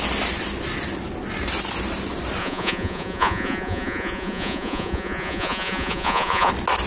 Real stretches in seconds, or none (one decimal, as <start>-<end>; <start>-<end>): 0.0-2.4; 6.5-6.9